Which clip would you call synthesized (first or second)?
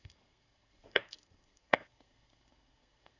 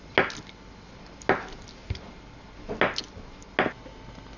first